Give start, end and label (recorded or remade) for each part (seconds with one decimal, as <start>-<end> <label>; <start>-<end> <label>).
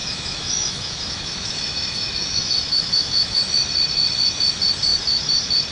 0.0-3.4 remade; 3.4-5.7 recorded